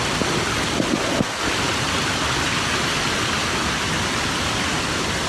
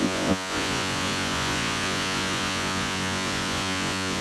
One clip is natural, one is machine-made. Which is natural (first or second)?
first